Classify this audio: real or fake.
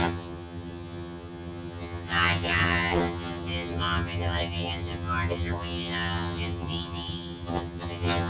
fake